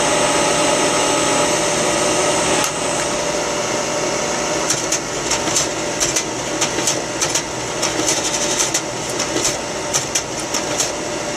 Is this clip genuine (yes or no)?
yes